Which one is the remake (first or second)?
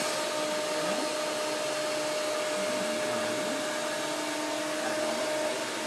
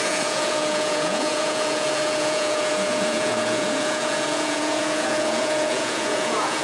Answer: second